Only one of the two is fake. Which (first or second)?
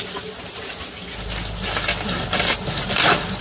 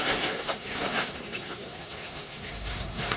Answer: second